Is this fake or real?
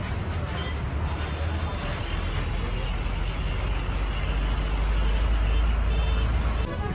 real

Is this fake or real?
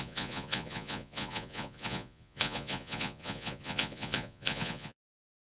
fake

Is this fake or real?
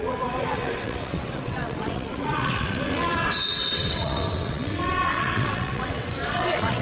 fake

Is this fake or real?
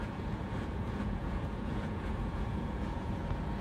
fake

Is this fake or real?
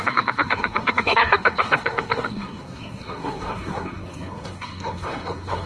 fake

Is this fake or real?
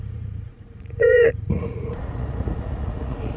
fake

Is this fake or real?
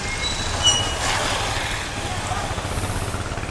real